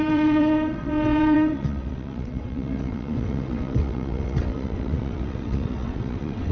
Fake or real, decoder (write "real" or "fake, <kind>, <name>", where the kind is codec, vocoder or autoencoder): fake, vocoder, WaveNeXt